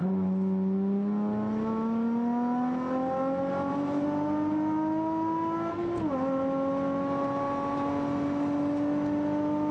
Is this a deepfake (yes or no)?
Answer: no